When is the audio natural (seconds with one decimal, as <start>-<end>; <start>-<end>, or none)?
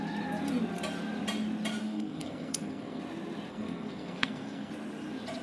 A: 0.0-1.8; 3.0-3.5; 4.7-5.4